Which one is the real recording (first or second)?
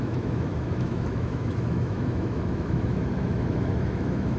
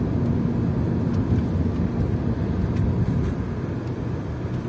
second